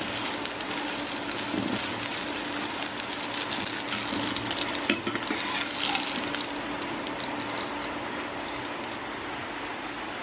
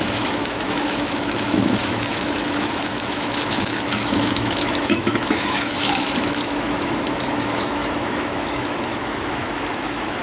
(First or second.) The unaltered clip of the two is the first